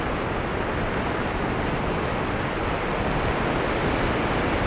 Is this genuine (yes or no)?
yes